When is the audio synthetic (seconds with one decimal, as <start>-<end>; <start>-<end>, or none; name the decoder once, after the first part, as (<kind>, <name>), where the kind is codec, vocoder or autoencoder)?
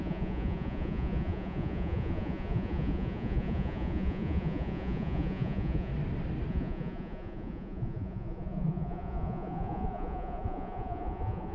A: 0.0-5.9 (vocoder, Vocos); 6.5-11.5